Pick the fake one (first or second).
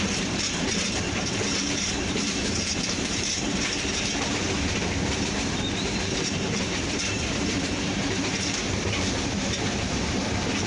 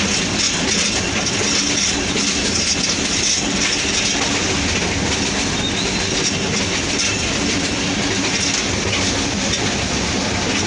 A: first